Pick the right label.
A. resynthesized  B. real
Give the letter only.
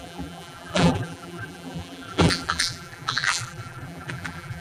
A